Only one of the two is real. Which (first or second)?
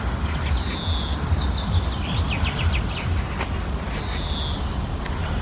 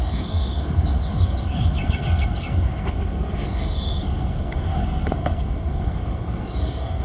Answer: first